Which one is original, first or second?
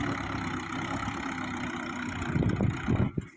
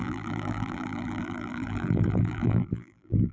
first